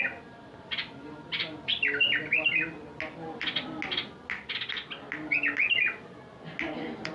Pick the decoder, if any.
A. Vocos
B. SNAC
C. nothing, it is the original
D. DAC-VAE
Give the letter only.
C